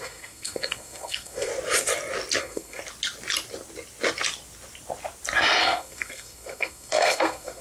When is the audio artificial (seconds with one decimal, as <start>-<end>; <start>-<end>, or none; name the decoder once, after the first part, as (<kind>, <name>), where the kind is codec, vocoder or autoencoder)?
0.0-1.5 (codec, SNAC); 2.4-2.8; 5.6-7.6